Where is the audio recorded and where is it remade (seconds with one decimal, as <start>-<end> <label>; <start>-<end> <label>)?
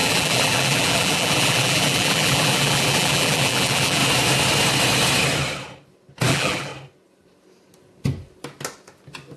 0.0-4.0 remade; 4.0-6.3 recorded; 6.3-6.7 remade; 6.7-9.4 recorded